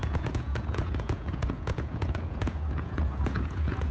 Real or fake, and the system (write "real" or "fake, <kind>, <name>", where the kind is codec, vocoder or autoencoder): fake, vocoder, Vocos